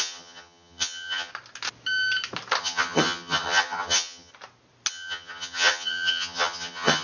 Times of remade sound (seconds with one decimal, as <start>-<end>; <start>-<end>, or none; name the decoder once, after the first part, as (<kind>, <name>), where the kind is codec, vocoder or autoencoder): 0.0-1.3 (vocoder, HiFi-GAN); 2.6-4.3; 4.9-7.0